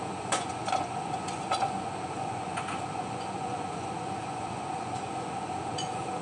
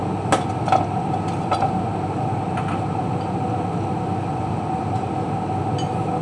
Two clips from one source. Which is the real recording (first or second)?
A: second